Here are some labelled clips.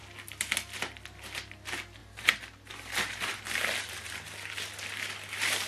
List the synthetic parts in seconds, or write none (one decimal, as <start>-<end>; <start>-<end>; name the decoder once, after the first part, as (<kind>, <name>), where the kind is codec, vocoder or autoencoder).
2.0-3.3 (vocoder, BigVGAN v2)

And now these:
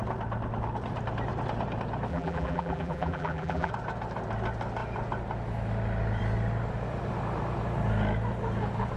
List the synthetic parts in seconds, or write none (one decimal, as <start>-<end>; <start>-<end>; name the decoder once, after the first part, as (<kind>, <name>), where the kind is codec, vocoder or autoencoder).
2.1-3.7 (vocoder, BigVGAN v2)

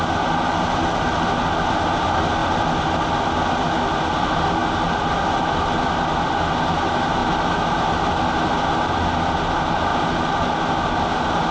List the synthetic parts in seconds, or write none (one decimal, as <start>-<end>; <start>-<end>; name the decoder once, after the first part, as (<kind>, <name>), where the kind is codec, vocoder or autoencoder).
9.9-10.4 (vocoder, BigVGAN v2)